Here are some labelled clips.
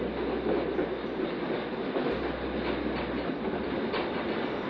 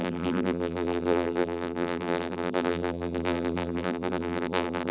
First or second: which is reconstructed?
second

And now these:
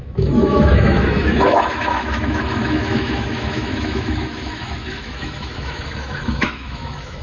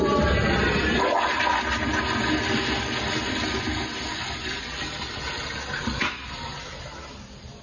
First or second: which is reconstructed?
first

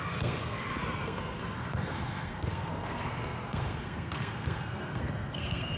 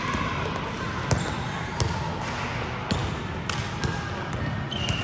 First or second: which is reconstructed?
first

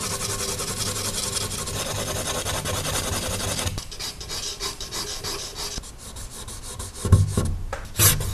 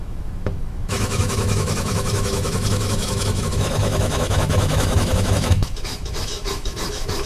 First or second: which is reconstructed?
second